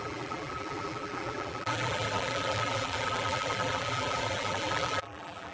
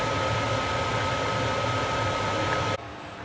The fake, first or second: first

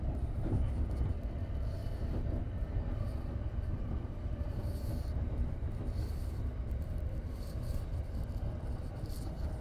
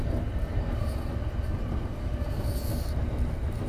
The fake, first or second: first